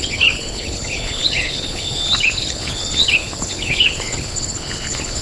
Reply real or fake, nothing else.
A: fake